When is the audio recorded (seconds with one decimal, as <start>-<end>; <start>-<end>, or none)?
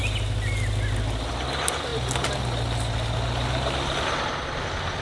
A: 0.0-1.3; 1.9-5.0